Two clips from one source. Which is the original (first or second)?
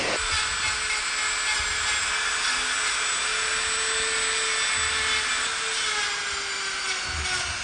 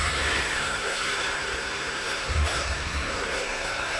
first